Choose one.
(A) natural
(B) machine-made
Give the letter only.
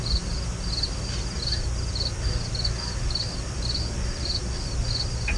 A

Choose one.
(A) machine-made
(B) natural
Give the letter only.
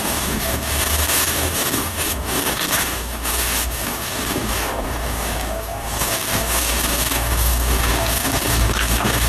A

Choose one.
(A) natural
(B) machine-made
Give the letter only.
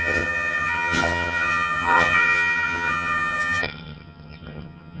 B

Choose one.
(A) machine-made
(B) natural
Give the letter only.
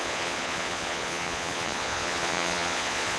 A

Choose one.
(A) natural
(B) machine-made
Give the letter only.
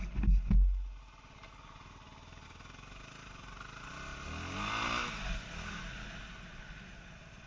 A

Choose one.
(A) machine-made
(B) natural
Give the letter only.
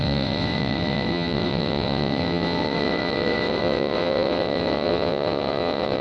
A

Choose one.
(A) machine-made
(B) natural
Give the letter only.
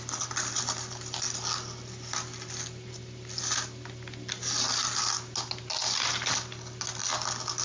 B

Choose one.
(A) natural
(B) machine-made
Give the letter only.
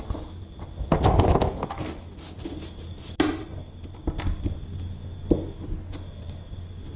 A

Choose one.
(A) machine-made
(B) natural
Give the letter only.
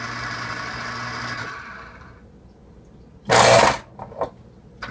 B